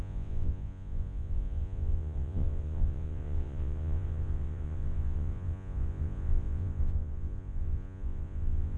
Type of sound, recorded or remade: remade